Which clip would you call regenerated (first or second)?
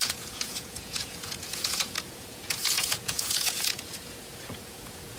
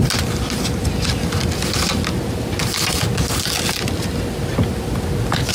first